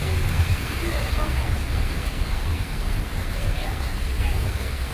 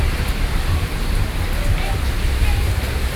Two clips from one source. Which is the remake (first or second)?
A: first